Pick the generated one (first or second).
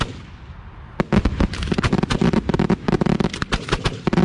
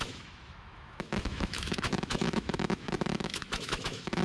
second